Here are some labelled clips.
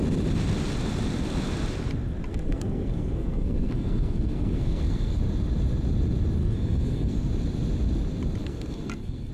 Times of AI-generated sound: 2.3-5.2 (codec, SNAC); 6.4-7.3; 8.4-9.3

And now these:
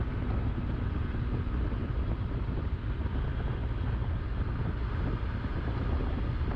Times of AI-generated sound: 1.8-3.2 (vocoder, BigVGAN v2)

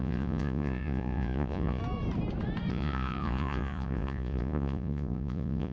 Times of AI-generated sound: 0.0-1.8 (vocoder, Vocos); 2.7-5.7

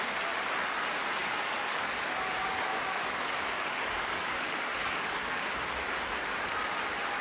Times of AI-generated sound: 1.2-5.5 (codec, DAC)

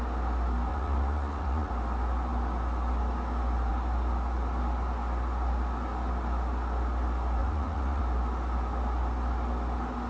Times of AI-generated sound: 0.7-1.7 (vocoder, Vocos); 7.4-8.0

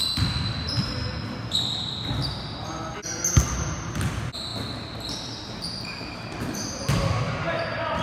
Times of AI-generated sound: none

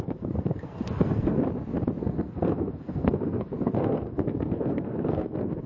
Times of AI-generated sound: 0.0-1.4 (codec, SNAC); 2.0-5.7

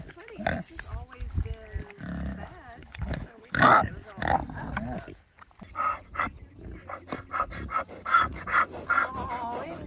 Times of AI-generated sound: 2.8-3.6 (codec, HILCodec)